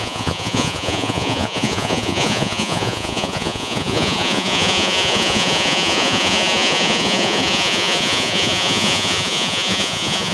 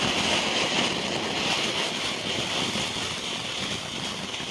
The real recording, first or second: second